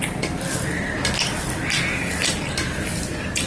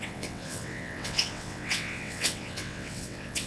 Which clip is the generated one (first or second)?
second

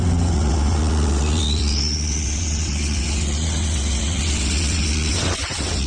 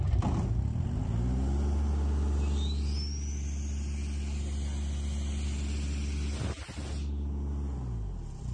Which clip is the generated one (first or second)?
first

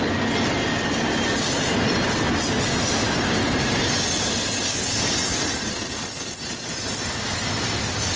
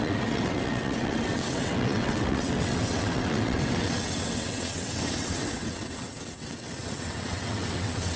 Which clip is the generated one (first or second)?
second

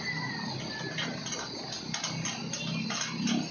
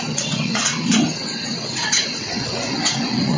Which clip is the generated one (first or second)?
second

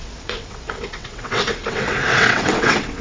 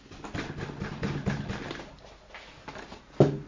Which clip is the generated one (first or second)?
first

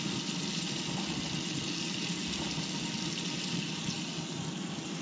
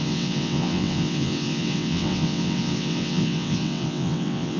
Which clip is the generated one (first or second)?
second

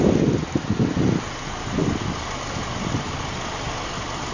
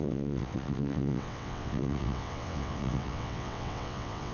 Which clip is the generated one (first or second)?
second